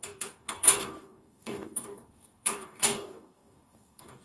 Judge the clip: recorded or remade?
remade